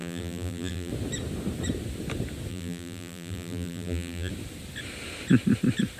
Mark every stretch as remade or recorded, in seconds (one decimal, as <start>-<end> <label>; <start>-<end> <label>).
0.0-0.9 remade; 0.9-2.5 recorded; 2.5-4.3 remade; 4.3-6.0 recorded